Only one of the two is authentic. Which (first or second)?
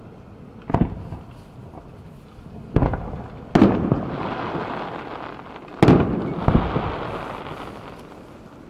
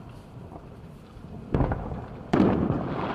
first